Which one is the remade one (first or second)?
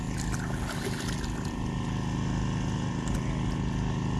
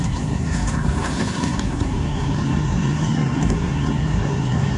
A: second